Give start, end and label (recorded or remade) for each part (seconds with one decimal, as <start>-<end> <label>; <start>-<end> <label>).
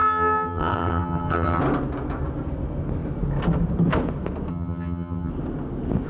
0.0-1.6 remade; 1.6-4.5 recorded; 4.5-5.3 remade; 5.3-6.1 recorded